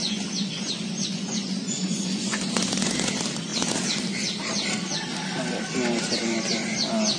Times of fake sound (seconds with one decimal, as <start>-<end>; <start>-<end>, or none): 0.0-3.1